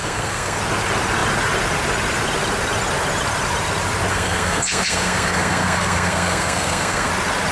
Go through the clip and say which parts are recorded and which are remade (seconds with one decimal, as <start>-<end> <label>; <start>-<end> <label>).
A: 0.0-0.6 remade; 0.6-4.1 recorded; 4.1-7.1 remade; 7.1-7.5 recorded